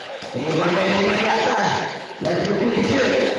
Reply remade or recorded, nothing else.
remade